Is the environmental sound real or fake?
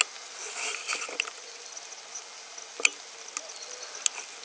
real